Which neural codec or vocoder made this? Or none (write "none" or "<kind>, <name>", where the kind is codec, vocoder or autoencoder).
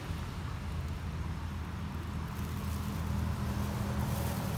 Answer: none